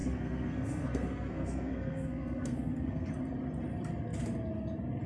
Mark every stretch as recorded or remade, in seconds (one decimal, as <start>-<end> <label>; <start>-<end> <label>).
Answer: 0.0-3.1 remade; 3.1-5.1 recorded